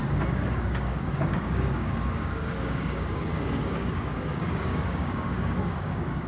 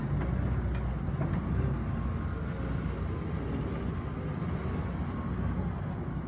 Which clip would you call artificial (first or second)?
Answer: first